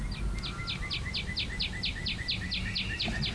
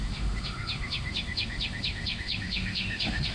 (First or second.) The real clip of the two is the first